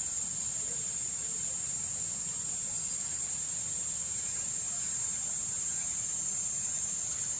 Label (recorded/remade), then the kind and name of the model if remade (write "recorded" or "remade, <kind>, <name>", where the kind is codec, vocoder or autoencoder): recorded